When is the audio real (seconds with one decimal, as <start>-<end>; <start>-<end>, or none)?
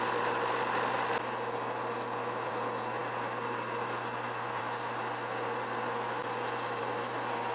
0.0-7.5